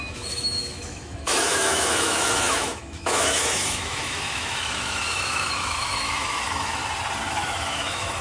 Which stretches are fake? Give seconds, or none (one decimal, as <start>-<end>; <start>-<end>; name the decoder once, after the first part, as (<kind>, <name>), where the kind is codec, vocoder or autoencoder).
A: 0.0-6.8 (autoencoder, DAC-VAE); 7.3-8.2